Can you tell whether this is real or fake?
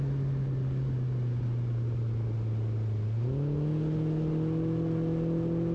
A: real